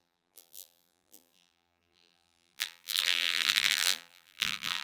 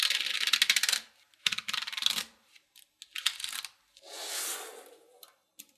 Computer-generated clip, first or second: first